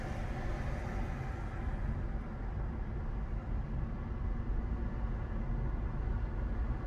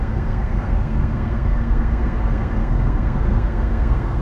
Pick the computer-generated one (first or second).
second